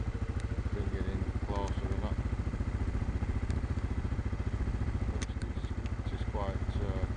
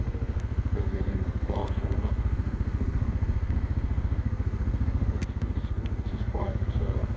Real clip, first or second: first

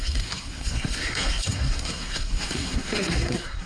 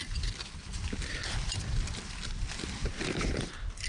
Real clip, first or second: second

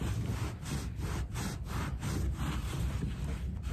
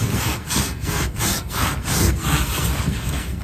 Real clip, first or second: first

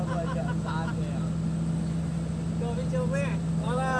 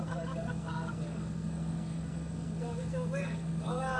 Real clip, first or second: first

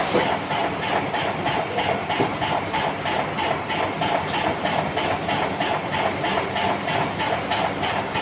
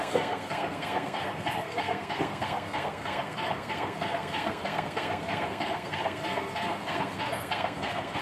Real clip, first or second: first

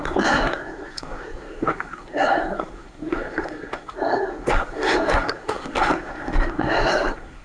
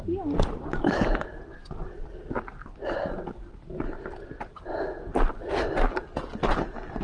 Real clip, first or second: second